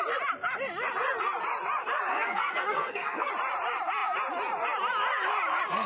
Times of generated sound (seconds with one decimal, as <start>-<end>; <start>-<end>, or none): 2.1-3.3